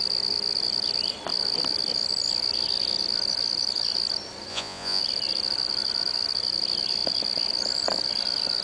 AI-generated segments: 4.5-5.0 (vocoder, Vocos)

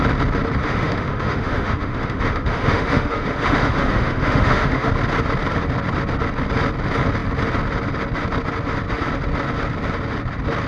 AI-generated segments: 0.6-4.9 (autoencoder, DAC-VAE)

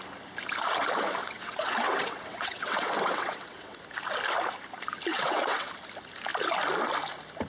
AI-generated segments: 1.2-3.8 (vocoder, WaveNeXt); 5.1-5.7

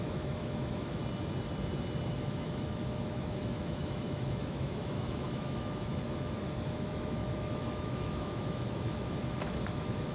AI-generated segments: 0.0-1.0 (autoencoder, DAC-VAE); 2.1-10.1

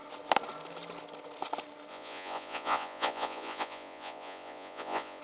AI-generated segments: 1.9-5.2 (vocoder, Vocos)

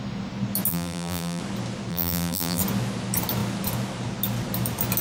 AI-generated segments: 0.7-1.4 (vocoder, BigVGAN v2); 1.9-2.6